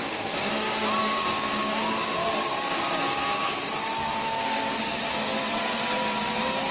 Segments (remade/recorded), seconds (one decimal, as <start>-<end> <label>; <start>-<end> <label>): 0.0-0.5 remade; 0.5-1.0 recorded; 1.0-5.0 remade; 5.0-6.7 recorded